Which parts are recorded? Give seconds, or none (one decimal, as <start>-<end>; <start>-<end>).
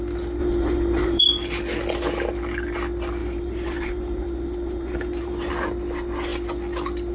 0.0-0.4; 1.2-3.2; 5.5-7.1